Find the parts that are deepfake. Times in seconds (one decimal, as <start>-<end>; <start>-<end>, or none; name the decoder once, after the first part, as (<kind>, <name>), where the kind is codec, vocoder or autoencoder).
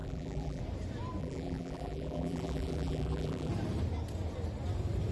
0.0-0.6 (vocoder, BigVGAN v2); 1.2-3.5